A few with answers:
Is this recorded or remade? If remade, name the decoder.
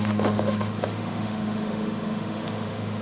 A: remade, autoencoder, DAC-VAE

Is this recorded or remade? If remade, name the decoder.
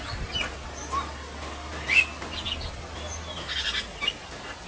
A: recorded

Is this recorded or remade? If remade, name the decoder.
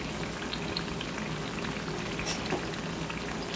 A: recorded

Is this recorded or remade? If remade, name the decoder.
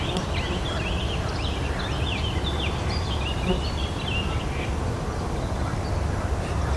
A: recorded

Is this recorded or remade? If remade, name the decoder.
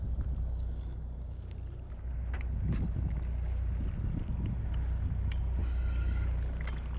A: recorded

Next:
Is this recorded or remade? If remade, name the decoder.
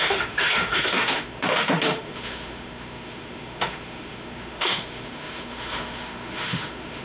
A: remade, autoencoder, DAC-VAE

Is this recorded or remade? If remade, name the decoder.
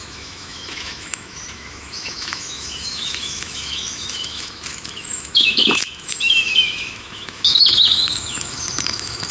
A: remade, autoencoder, DAC-VAE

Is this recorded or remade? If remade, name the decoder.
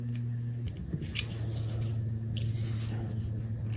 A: recorded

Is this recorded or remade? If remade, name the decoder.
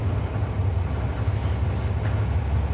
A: recorded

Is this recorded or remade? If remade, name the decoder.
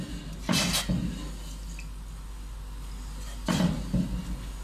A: recorded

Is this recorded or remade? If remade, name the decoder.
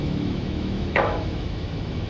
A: remade, autoencoder, DAC-VAE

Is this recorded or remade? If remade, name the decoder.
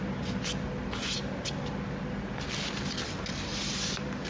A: recorded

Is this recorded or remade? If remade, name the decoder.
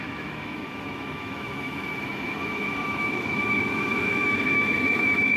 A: remade, autoencoder, DAC-VAE